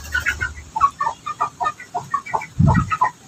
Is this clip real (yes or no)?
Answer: yes